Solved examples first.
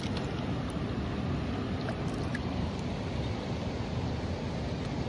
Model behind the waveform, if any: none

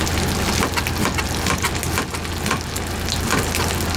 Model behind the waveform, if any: none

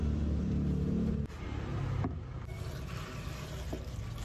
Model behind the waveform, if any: none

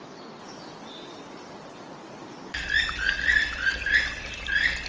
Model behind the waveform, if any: none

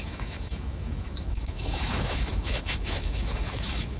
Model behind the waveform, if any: autoencoder, DAC-VAE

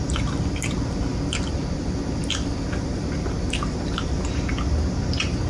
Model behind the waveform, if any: none